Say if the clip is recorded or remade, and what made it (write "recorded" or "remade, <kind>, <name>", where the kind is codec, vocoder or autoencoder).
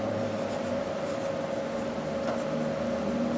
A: recorded